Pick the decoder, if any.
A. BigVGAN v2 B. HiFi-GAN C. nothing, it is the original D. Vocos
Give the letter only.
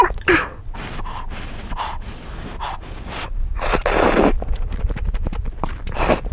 C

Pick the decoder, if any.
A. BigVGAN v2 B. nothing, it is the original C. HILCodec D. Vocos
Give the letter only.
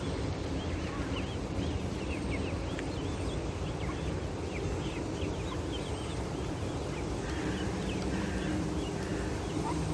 B